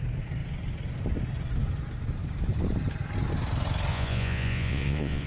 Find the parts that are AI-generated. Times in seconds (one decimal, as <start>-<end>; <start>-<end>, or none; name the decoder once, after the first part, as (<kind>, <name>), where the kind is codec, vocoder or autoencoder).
3.9-5.3 (vocoder, Vocos)